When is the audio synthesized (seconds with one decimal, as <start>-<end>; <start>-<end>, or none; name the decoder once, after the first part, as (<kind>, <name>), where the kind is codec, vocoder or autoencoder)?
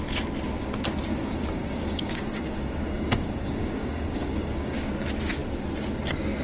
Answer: 1.1-4.9 (codec, DAC)